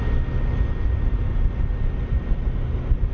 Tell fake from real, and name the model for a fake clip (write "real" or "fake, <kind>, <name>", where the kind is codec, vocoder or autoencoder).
real